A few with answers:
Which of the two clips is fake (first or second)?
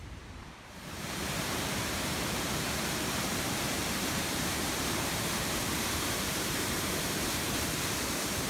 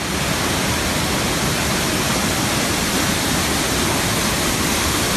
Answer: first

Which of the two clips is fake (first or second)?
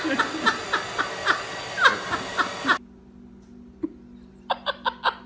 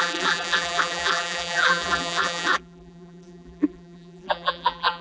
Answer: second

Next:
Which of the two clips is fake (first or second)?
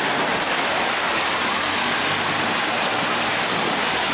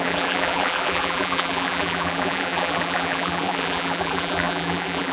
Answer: second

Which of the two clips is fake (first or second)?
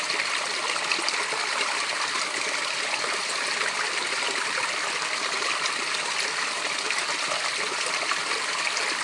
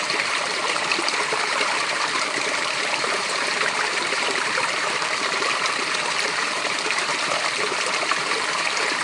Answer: second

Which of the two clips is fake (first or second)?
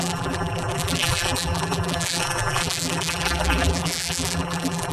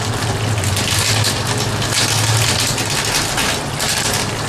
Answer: first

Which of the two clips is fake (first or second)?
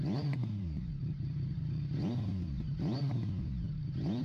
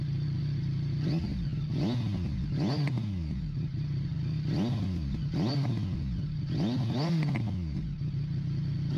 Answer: first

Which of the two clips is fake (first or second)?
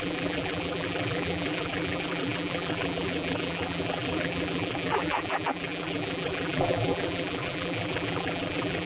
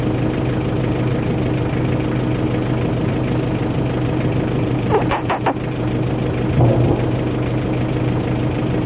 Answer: first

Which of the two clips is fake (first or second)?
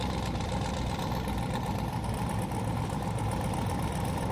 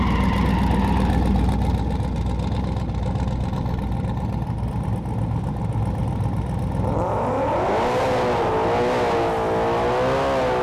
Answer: first